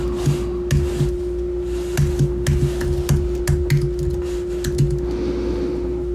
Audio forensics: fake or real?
real